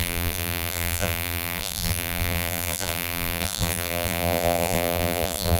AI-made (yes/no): yes